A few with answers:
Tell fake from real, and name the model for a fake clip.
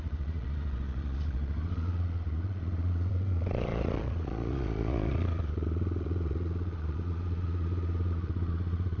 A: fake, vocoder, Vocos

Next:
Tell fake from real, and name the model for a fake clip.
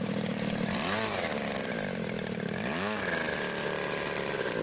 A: real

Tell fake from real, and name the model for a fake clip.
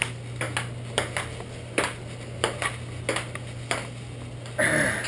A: real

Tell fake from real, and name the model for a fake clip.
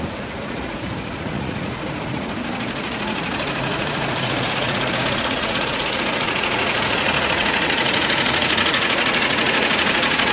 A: fake, vocoder, Vocos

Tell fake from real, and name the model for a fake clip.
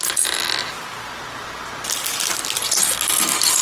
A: real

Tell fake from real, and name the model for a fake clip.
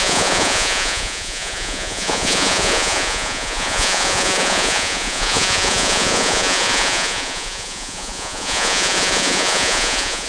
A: fake, vocoder, Vocos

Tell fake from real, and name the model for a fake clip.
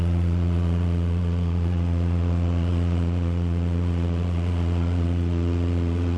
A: fake, vocoder, Vocos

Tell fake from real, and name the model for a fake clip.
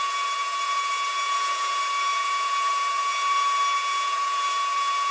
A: fake, vocoder, Vocos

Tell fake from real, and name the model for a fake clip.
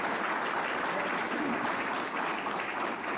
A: real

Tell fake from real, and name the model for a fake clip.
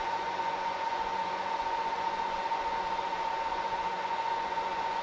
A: fake, vocoder, Vocos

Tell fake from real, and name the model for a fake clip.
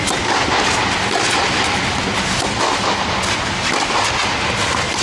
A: real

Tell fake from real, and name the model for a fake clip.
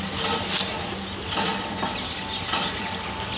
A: real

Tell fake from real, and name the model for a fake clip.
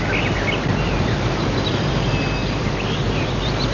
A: real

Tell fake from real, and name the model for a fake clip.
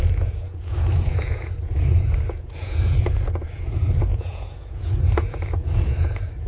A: fake, vocoder, Vocos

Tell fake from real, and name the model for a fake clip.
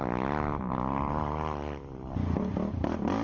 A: real